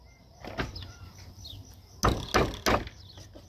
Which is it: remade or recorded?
recorded